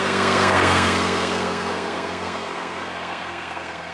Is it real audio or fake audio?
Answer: fake